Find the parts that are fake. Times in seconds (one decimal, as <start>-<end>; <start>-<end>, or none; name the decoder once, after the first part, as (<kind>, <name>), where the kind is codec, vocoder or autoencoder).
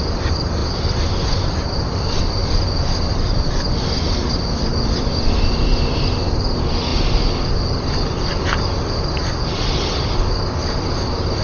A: 0.6-1.1 (vocoder, BigVGAN v2); 2.4-4.3